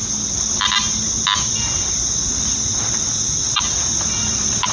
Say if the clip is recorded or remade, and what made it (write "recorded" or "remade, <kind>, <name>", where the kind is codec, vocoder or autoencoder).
recorded